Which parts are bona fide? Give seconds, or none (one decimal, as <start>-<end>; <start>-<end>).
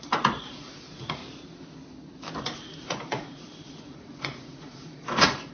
1.2-2.4